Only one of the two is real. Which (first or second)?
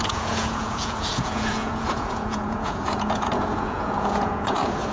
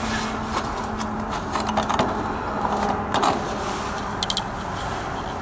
second